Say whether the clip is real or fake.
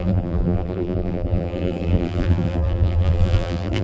fake